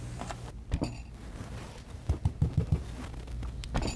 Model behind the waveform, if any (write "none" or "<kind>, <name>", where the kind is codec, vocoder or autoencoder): none